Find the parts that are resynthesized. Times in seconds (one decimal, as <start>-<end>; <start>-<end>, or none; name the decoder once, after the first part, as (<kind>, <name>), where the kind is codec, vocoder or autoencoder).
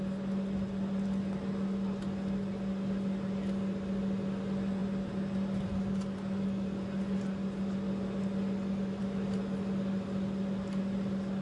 none